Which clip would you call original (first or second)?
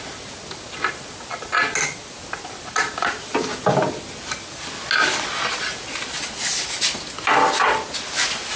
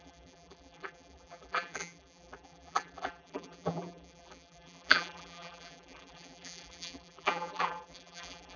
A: first